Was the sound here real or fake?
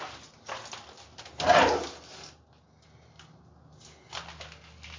real